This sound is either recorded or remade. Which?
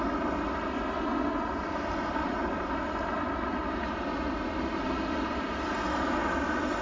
recorded